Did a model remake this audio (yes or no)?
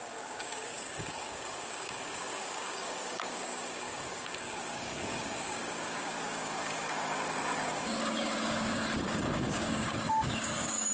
yes